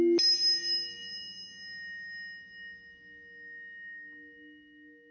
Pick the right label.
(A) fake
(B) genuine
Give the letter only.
B